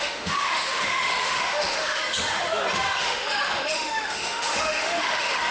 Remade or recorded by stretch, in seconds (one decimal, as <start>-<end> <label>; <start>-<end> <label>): 0.0-2.0 remade; 2.0-3.0 recorded; 3.0-5.5 remade